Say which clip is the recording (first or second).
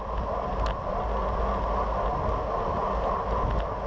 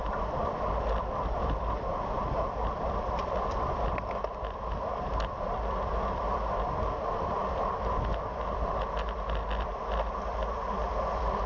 first